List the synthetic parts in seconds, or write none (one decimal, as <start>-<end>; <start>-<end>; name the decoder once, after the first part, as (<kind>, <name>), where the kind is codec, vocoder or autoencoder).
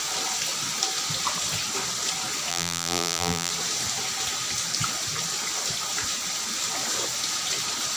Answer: 2.5-3.5 (vocoder, BigVGAN v2)